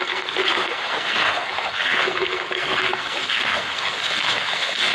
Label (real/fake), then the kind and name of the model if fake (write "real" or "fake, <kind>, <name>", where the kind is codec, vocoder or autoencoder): fake, codec, SNAC